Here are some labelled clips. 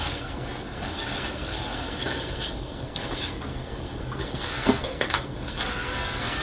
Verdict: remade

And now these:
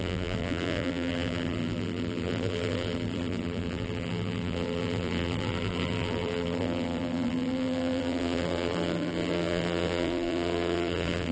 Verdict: remade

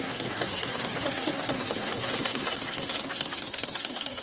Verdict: remade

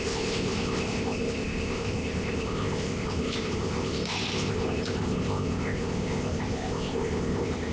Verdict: remade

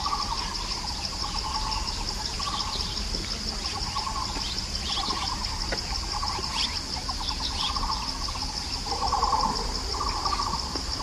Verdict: recorded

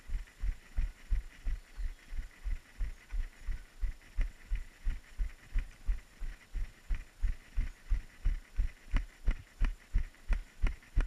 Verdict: recorded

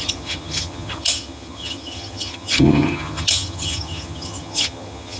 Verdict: remade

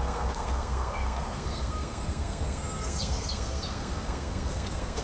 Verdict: remade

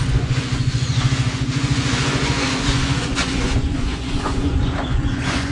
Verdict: remade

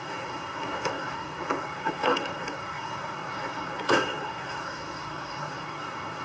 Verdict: remade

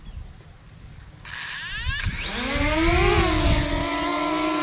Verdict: recorded